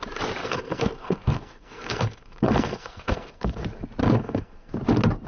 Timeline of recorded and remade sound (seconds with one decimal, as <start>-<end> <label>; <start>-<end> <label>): 0.0-0.4 recorded; 0.4-3.6 remade; 3.6-4.0 recorded; 4.0-4.7 remade; 4.7-5.3 recorded